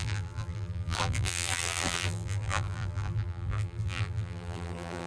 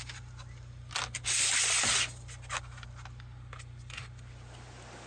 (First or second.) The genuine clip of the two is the second